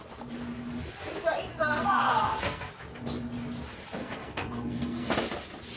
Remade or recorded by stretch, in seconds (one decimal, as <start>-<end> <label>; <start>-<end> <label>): 0.0-1.5 recorded; 1.5-2.7 remade; 2.7-4.0 recorded; 4.0-5.1 remade; 5.1-5.8 recorded